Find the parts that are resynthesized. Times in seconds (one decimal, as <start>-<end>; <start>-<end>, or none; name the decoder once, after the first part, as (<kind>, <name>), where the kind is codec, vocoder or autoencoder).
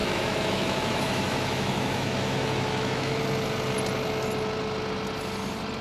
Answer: 0.0-3.2 (autoencoder, DAC-VAE)